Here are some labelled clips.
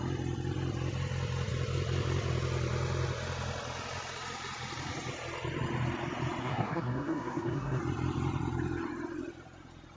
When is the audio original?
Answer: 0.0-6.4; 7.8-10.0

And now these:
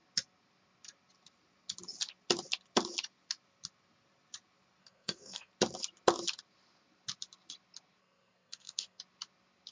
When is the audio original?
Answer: 0.0-4.8; 5.5-8.0; 9.0-9.7

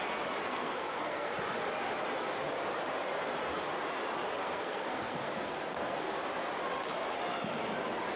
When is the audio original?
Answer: 0.0-0.4; 1.3-4.4; 6.2-8.2